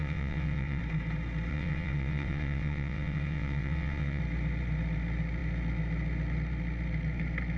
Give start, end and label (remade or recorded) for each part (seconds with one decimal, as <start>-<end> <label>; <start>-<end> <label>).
0.0-0.8 remade; 0.8-1.5 recorded; 1.5-4.2 remade; 4.2-7.6 recorded